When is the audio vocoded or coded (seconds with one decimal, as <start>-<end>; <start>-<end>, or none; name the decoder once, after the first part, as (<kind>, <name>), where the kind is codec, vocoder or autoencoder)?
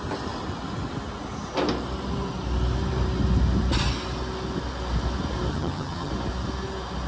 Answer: 5.5-6.1 (vocoder, HiFi-GAN)